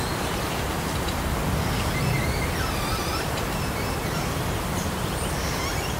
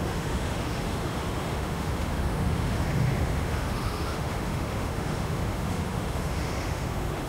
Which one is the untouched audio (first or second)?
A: first